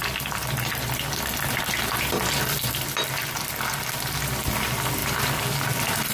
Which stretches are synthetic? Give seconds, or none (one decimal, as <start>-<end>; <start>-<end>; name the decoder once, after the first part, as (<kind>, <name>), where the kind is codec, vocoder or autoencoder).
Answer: none